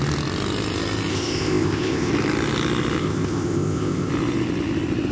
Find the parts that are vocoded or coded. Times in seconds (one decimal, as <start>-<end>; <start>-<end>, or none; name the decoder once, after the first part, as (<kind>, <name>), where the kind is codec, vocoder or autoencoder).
1.1-2.1 (codec, ZipCodec); 3.0-4.1